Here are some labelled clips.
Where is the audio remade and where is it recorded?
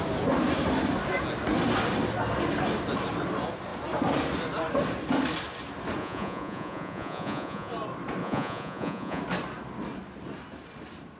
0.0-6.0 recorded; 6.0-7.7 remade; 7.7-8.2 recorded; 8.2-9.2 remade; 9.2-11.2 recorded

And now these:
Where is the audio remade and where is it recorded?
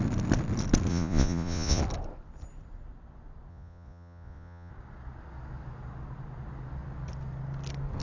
0.0-0.9 recorded; 0.9-1.8 remade; 1.8-3.5 recorded; 3.5-4.7 remade; 4.7-8.0 recorded